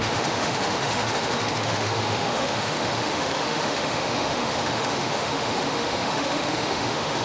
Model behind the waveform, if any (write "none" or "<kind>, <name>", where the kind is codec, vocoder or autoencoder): autoencoder, DAC-VAE